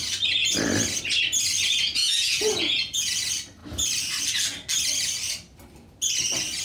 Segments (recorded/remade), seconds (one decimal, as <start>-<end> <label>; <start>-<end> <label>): 0.0-2.0 recorded; 2.0-3.2 remade; 3.2-6.6 recorded